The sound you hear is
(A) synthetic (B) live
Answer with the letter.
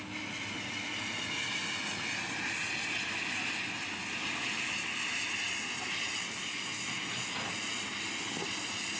B